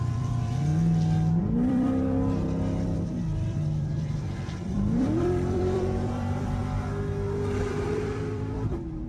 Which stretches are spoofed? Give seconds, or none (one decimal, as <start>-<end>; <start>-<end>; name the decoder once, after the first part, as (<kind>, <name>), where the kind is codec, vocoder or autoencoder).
0.0-0.7 (vocoder, BigVGAN v2); 1.4-6.6; 7.6-9.1